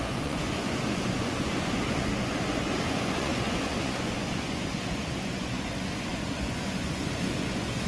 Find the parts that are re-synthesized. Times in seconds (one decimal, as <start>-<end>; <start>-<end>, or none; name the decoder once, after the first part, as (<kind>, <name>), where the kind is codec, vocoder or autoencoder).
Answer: 0.0-7.9 (vocoder, Vocos)